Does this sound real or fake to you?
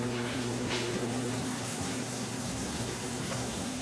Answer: fake